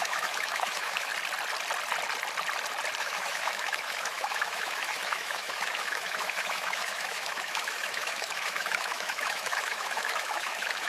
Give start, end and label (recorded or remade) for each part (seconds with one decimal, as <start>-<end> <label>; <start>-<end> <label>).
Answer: 0.0-1.1 remade; 1.1-3.0 recorded; 3.0-10.9 remade